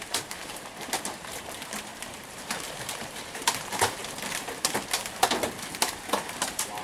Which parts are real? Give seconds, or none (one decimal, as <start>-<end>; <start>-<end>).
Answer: 4.0-5.7